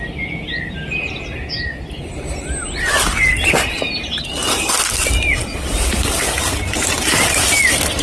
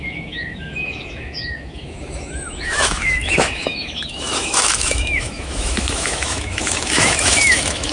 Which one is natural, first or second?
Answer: first